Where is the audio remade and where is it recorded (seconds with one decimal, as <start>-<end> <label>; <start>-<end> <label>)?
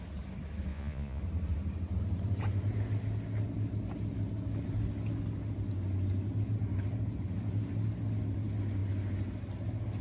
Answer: 0.0-0.7 recorded; 0.7-1.2 remade; 1.2-10.0 recorded